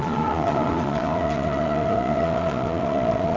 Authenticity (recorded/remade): remade